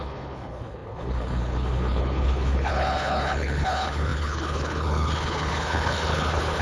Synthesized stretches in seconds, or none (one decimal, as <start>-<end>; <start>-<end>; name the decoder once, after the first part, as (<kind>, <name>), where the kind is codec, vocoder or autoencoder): 0.0-6.6 (codec, HILCodec)